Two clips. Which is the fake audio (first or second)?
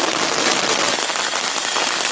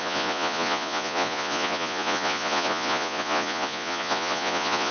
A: second